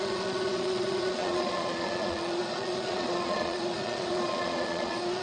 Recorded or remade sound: remade